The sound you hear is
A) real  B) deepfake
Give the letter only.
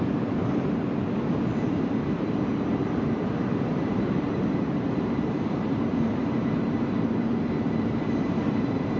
B